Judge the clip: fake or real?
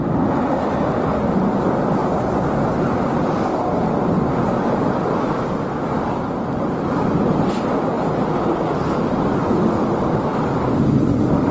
real